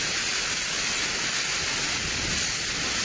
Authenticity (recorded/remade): recorded